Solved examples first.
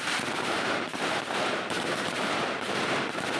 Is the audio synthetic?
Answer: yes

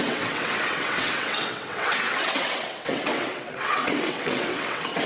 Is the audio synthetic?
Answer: yes